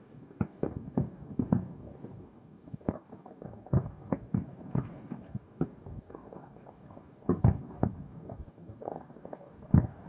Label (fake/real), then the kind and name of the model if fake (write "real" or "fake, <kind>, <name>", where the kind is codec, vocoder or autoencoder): fake, codec, DAC